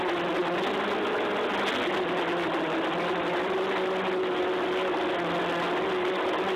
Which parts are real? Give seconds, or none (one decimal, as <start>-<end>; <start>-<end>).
0.0-6.6